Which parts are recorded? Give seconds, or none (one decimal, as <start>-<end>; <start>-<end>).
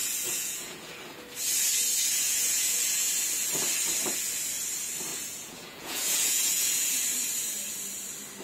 0.9-2.1; 3.1-5.1; 7.0-8.4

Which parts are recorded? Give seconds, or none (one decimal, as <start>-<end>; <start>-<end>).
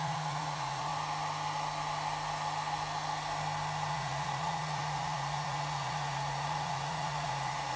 0.9-3.9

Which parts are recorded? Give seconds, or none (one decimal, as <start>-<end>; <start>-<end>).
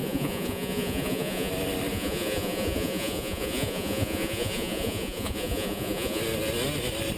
1.5-1.9; 6.2-7.2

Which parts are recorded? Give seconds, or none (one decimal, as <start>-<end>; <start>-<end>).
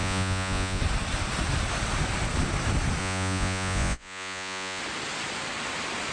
0.8-3.0; 4.8-6.1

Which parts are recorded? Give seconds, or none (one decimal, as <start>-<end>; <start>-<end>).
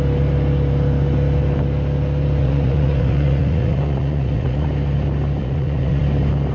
0.0-2.4; 4.7-5.4; 6.0-6.5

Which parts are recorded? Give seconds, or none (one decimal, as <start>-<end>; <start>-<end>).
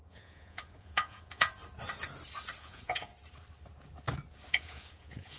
1.6-2.6; 3.1-4.5